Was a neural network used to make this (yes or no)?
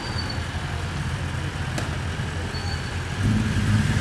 no